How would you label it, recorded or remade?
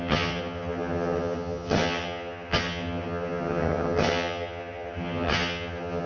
remade